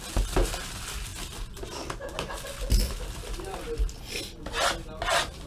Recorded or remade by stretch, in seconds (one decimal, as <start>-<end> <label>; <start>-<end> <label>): 0.0-5.5 recorded